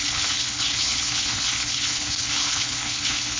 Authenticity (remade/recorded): remade